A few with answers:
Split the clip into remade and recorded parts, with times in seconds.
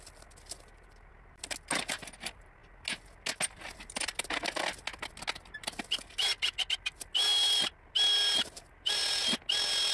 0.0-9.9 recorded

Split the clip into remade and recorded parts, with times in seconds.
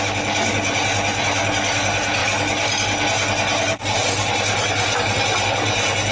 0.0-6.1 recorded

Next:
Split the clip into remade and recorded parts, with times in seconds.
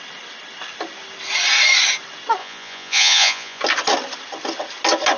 0.0-2.4 recorded; 2.4-3.6 remade; 3.6-5.2 recorded